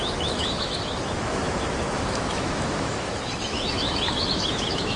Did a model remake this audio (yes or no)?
yes